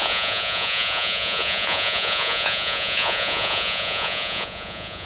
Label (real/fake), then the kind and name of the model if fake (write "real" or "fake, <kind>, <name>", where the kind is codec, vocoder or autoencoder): fake, vocoder, Vocos